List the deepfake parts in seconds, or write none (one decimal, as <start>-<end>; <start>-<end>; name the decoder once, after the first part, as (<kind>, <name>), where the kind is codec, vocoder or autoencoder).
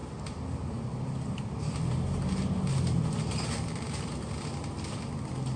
none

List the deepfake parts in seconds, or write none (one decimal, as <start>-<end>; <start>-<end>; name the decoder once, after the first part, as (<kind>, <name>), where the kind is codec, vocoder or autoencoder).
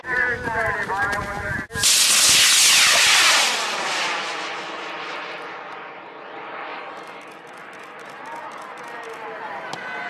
6.7-7.2 (vocoder, BigVGAN v2)